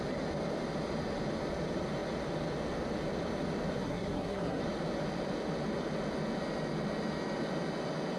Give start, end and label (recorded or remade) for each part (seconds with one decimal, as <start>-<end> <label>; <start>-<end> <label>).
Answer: 0.0-3.8 recorded; 3.8-4.6 remade; 4.6-8.2 recorded